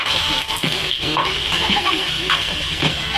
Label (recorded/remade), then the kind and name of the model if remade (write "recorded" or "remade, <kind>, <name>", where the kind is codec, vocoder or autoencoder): remade, codec, SNAC